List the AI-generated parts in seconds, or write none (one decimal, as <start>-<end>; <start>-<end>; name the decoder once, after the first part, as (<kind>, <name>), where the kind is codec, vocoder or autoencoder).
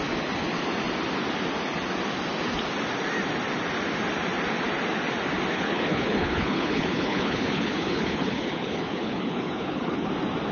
5.5-10.1 (codec, HILCodec)